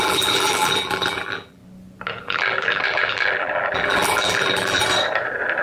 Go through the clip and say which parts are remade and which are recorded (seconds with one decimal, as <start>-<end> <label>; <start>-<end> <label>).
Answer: 0.0-1.6 remade; 1.6-2.2 recorded; 2.2-4.8 remade; 4.8-5.6 recorded